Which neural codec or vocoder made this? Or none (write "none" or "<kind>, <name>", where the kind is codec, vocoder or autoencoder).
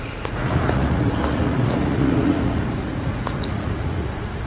vocoder, Vocos